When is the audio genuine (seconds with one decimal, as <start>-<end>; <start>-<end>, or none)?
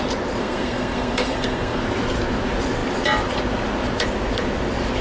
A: 0.0-0.4; 1.8-5.0